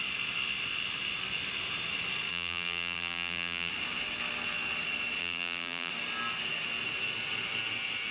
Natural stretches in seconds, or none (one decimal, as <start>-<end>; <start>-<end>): 0.0-2.3; 3.7-5.2; 5.9-8.1